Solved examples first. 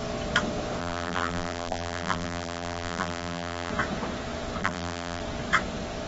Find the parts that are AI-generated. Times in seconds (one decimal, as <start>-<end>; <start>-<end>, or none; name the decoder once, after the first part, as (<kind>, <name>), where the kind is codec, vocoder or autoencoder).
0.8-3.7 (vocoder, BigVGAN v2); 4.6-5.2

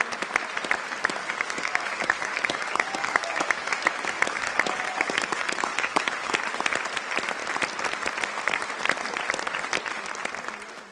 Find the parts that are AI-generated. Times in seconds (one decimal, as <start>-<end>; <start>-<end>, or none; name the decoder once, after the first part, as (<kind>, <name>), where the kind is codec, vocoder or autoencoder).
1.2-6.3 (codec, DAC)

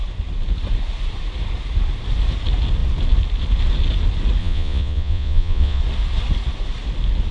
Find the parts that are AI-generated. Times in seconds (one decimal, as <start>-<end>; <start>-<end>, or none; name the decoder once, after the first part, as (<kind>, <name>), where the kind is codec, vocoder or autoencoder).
4.4-5.8 (vocoder, Vocos)